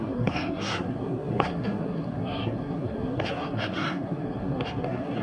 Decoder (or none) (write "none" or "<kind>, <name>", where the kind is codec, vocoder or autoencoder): codec, SNAC